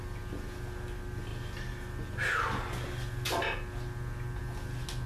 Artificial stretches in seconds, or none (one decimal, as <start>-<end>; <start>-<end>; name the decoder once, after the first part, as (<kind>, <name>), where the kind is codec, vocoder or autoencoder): none